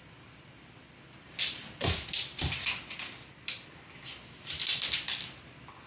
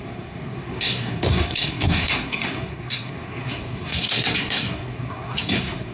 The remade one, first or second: second